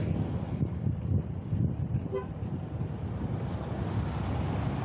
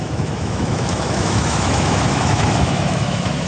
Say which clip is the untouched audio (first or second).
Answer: first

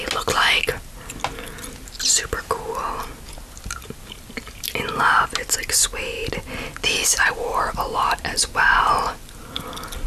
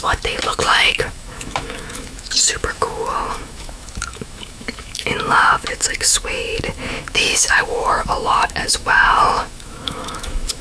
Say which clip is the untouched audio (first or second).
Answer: first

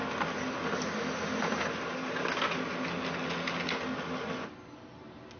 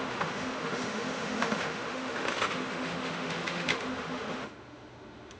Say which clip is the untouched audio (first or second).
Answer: first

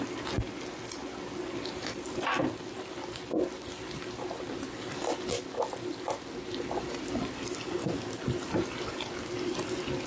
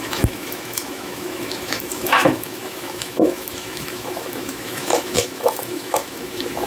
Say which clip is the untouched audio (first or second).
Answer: first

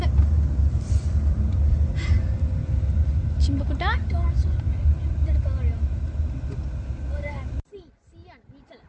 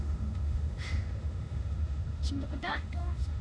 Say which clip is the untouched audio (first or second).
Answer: first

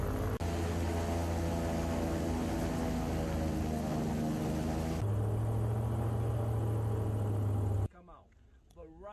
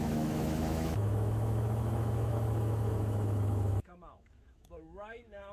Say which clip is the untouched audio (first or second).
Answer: first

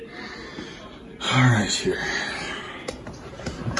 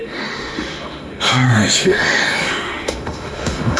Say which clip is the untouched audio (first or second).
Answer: first